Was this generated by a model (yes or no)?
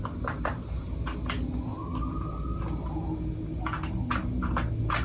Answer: no